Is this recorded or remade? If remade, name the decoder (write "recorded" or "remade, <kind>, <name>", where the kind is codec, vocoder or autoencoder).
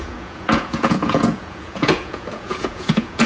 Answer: remade, vocoder, Vocos